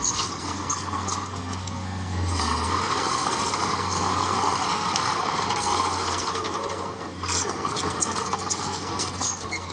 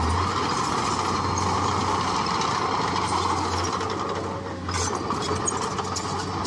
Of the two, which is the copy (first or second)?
first